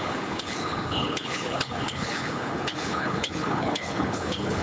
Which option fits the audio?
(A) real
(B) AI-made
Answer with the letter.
B